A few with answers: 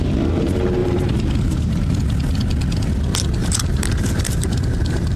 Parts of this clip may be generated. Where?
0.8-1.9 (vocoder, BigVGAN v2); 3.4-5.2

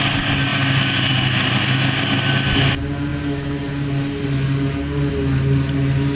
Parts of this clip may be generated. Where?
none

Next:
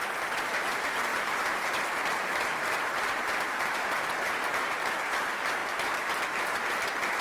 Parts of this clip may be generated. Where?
1.1-4.9 (vocoder, BigVGAN v2)

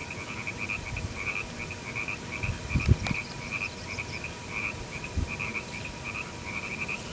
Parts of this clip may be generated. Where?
2.7-3.2 (vocoder, BigVGAN v2); 4.8-7.1